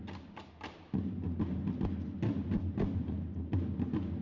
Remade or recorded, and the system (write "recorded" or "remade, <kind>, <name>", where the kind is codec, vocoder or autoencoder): recorded